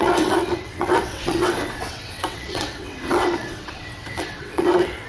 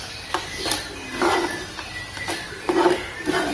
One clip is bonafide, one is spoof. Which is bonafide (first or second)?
second